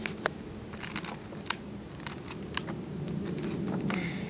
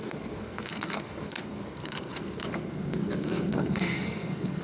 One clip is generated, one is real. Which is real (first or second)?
first